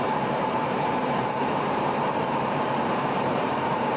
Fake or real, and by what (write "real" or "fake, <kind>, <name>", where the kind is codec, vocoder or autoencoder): fake, vocoder, BigVGAN v2